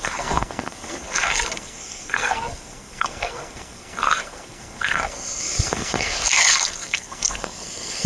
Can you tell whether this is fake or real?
fake